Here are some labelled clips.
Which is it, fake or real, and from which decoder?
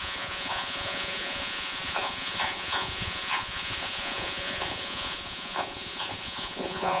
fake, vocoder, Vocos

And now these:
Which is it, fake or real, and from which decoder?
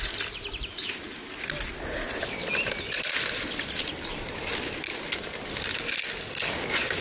real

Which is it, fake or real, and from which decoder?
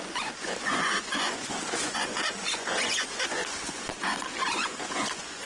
fake, vocoder, Vocos